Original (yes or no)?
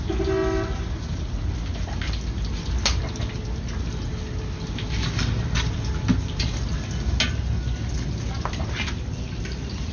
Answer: yes